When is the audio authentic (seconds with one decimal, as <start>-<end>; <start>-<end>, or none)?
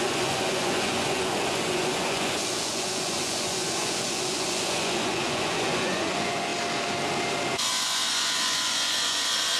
6.5-7.5